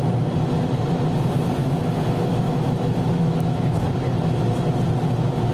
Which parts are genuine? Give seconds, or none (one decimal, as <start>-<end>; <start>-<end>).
0.0-1.6; 3.8-5.5